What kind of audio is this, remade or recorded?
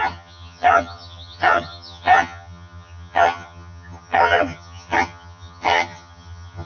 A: remade